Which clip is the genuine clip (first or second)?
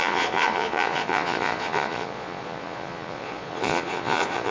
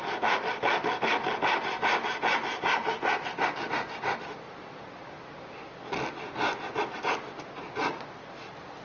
second